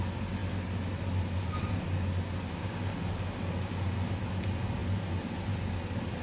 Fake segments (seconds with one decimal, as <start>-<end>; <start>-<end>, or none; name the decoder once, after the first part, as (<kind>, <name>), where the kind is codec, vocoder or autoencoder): none